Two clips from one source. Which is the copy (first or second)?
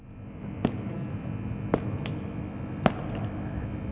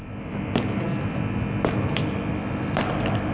second